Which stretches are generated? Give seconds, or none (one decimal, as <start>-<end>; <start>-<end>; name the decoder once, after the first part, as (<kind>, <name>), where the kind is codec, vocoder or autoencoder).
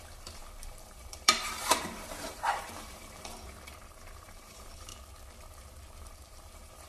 0.0-4.9 (vocoder, BigVGAN v2); 6.0-6.9